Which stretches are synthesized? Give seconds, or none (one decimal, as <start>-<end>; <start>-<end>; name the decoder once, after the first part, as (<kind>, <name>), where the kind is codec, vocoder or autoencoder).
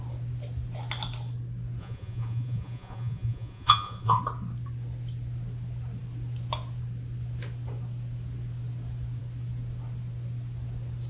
1.8-4.2 (vocoder, Vocos)